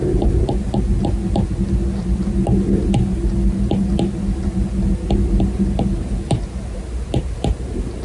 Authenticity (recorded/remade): recorded